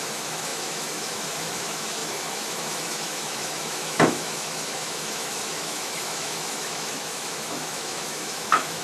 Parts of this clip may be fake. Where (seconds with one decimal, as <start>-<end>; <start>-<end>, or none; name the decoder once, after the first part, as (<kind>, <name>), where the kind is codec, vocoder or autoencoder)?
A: 0.0-8.8 (autoencoder, DAC-VAE)